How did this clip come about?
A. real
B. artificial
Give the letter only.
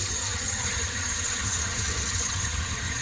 B